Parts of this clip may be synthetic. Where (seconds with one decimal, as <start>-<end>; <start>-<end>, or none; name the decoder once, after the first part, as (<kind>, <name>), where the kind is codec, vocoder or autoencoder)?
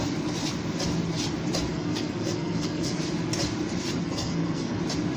1.7-3.0 (codec, SNAC); 4.0-4.8